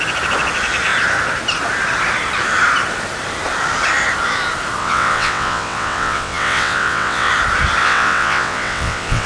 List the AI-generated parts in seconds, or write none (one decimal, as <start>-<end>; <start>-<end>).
4.8-7.3; 7.8-9.3